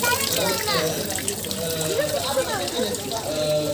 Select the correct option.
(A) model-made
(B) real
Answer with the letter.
B